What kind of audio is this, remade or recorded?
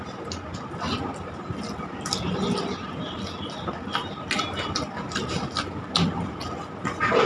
recorded